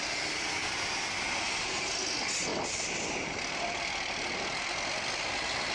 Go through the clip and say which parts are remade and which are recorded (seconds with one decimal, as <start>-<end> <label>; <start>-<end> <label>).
0.0-1.2 remade; 1.2-2.5 recorded; 2.5-5.2 remade; 5.2-5.7 recorded